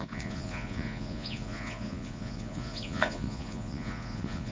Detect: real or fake fake